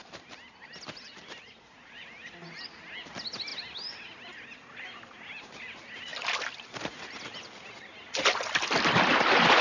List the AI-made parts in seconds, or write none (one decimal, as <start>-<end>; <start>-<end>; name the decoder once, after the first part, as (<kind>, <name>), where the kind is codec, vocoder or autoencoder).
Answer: 0.0-3.1 (vocoder, BigVGAN v2)